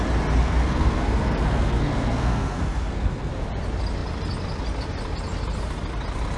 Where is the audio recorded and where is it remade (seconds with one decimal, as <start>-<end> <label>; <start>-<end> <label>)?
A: 0.0-0.4 recorded; 0.4-3.3 remade; 3.3-6.4 recorded